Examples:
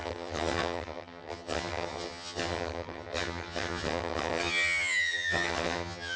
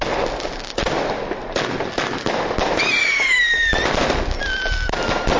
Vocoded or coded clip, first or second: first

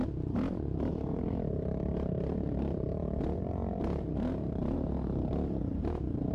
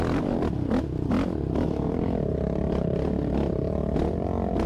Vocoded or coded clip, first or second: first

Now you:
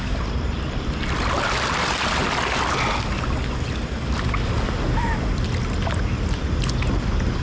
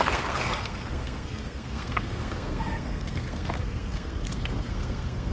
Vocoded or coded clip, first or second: second